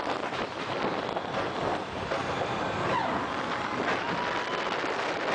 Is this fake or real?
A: real